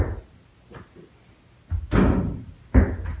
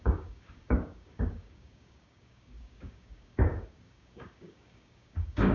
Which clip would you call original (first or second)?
first